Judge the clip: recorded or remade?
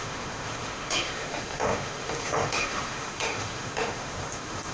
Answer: remade